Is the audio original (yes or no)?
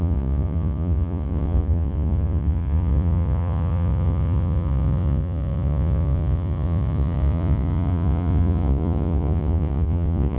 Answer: no